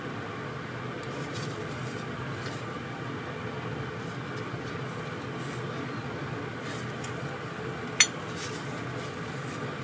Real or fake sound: real